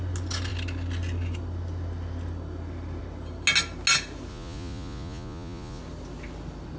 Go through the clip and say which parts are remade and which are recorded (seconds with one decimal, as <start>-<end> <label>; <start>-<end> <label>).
0.0-4.3 recorded; 4.3-5.8 remade; 5.8-6.8 recorded